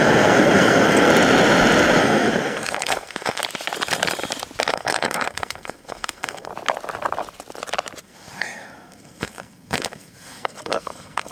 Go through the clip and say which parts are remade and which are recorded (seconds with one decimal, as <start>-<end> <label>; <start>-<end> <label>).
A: 0.0-1.1 remade; 1.1-2.0 recorded; 2.0-3.4 remade; 3.4-4.7 recorded; 4.7-6.5 remade; 6.5-8.0 recorded; 8.0-11.3 remade